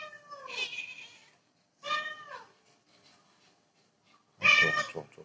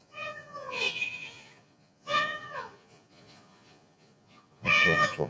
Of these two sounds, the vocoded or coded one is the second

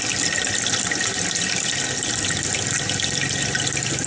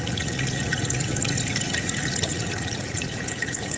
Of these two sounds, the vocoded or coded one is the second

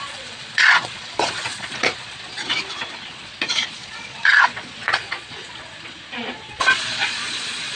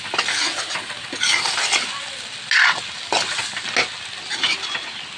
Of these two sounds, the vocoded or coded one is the first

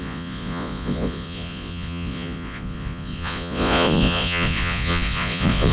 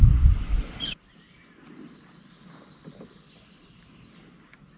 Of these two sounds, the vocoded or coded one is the first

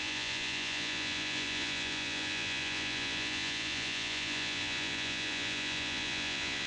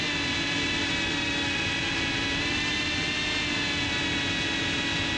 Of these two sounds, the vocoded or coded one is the first